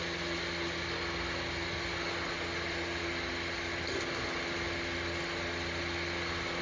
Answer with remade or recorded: recorded